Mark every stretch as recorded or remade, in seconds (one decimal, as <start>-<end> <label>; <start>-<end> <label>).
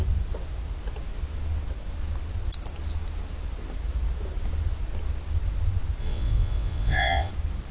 0.0-6.0 recorded; 6.0-7.3 remade; 7.3-7.7 recorded